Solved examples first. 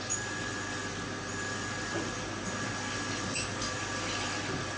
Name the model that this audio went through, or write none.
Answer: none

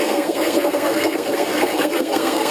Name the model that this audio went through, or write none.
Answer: codec, SNAC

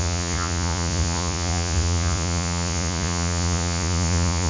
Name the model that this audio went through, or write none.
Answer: vocoder, Vocos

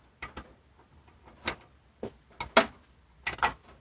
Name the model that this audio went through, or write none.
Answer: none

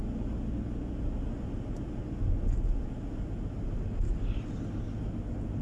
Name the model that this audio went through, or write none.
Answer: none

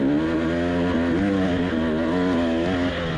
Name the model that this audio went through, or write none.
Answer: none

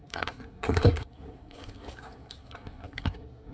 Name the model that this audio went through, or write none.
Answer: codec, SNAC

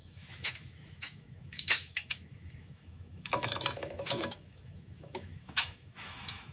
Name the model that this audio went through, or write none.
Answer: autoencoder, DAC-VAE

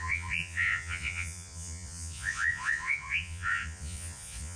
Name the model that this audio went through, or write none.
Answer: vocoder, Vocos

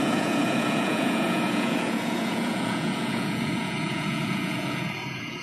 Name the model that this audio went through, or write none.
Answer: vocoder, Vocos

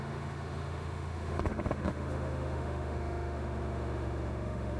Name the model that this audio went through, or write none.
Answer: autoencoder, DAC-VAE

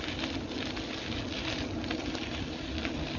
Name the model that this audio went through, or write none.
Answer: none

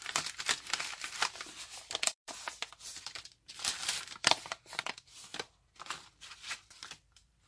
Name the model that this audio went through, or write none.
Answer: vocoder, BigVGAN v2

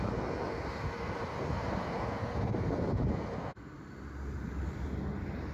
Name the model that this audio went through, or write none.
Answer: none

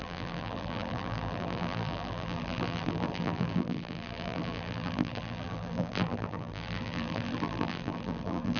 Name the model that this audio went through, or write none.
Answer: vocoder, BigVGAN v2